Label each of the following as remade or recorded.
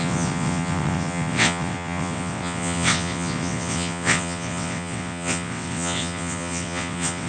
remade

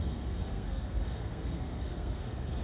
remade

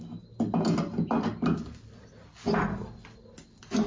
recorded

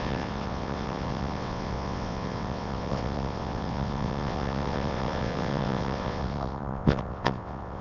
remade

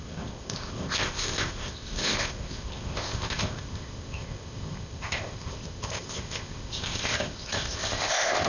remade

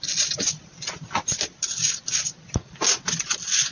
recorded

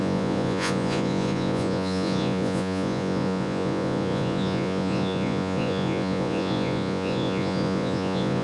remade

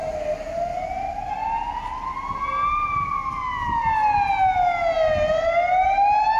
recorded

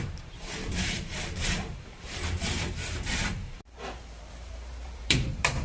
remade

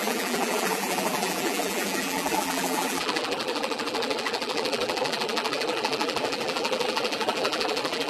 remade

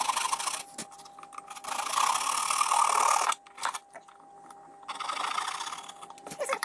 recorded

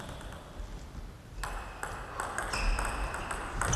recorded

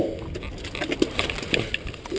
recorded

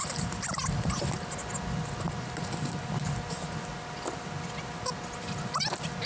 recorded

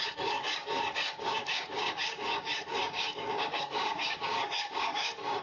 remade